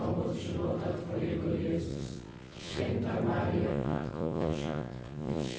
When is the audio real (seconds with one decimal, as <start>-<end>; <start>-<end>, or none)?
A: 0.0-1.9; 2.8-3.7